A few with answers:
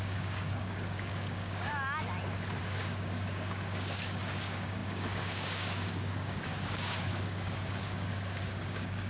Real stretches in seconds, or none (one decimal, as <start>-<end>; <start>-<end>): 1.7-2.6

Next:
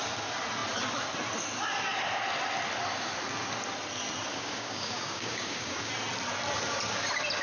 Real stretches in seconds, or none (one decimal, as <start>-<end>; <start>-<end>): 0.0-4.3; 5.9-7.4

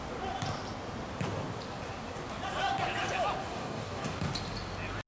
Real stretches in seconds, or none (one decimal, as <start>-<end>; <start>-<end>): 0.0-3.4; 4.3-5.1